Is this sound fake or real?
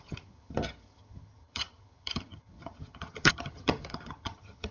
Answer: fake